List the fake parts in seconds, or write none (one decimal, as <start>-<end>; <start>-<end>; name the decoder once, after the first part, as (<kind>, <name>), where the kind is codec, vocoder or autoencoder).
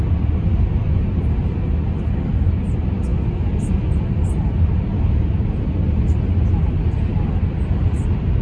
none